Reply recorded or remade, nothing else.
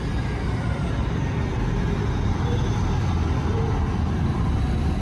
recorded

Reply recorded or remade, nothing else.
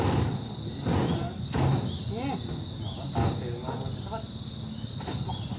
recorded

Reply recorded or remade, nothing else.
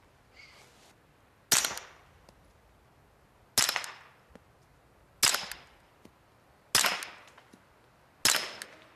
recorded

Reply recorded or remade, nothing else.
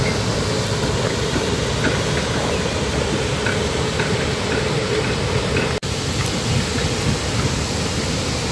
recorded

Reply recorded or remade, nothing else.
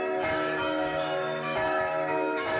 remade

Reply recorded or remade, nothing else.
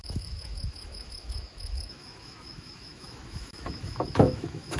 remade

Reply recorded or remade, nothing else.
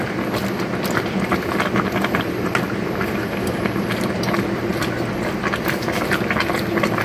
recorded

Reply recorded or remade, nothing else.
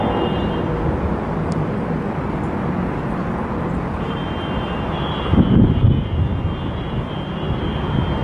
recorded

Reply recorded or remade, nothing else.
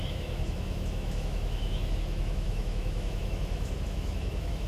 remade